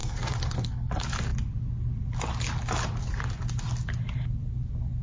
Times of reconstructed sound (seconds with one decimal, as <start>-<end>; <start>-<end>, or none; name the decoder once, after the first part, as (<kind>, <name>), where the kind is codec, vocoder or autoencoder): 0.0-0.9 (codec, SNAC)